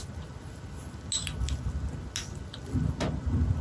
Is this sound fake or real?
real